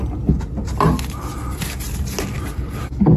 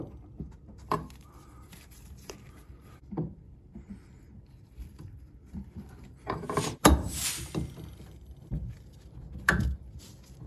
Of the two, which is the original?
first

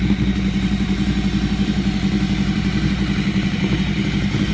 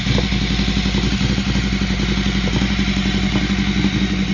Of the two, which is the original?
second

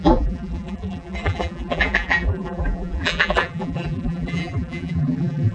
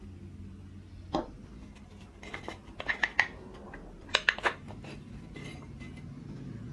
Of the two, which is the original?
second